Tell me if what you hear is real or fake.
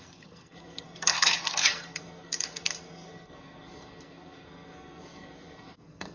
fake